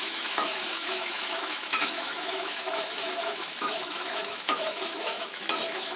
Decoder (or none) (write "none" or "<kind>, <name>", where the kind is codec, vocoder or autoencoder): autoencoder, DAC-VAE